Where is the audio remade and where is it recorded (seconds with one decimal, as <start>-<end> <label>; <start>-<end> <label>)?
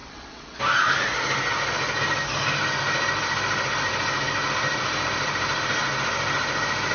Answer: 0.0-0.6 remade; 0.6-6.9 recorded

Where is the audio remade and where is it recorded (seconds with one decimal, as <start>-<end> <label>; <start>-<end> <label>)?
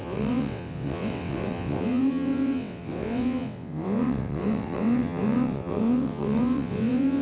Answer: 0.0-7.2 remade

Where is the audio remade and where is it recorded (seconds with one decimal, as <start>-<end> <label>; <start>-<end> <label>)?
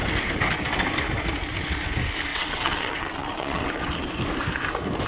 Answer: 0.0-2.3 recorded; 2.3-3.9 remade; 3.9-5.1 recorded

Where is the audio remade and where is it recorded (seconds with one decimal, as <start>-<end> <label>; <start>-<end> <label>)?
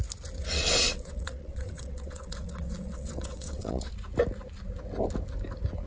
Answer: 0.0-0.4 recorded; 0.4-3.9 remade; 3.9-5.9 recorded